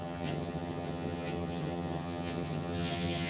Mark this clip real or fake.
fake